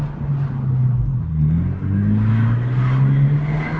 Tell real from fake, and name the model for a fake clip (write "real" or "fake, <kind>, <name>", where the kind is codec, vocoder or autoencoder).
real